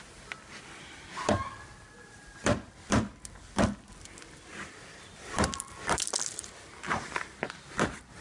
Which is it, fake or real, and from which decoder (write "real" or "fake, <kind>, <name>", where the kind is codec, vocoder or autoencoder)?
fake, vocoder, BigVGAN v2